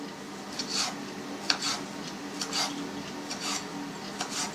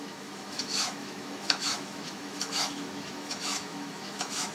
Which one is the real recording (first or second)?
first